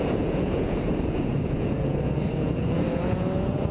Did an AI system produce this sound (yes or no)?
yes